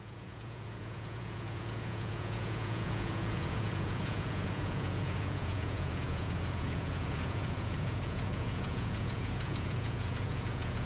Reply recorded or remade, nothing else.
remade